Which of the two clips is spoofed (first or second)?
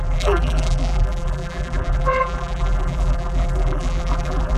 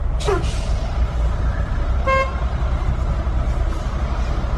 first